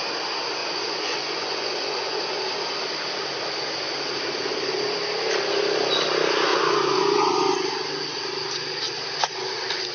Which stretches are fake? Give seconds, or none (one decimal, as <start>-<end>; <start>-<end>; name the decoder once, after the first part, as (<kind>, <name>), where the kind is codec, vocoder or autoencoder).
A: 0.6-2.2 (vocoder, Vocos); 6.5-7.7

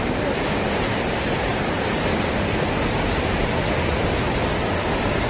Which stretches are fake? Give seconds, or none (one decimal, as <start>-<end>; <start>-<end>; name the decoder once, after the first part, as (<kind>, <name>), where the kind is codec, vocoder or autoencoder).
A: 1.5-4.7 (vocoder, BigVGAN v2)

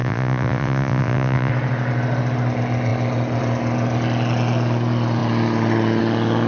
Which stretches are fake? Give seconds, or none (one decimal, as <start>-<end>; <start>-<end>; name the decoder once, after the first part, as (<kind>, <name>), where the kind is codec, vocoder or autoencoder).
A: 0.0-1.5 (vocoder, Vocos)